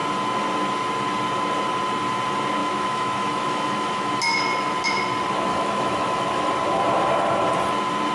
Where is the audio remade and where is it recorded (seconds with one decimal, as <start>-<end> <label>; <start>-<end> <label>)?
0.0-2.6 recorded; 2.6-4.1 remade; 4.1-5.5 recorded; 5.5-6.5 remade; 6.5-8.1 recorded